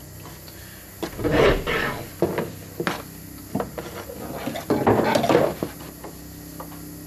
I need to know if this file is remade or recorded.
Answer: recorded